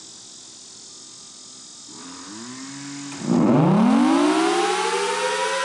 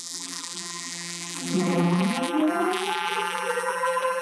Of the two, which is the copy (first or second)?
second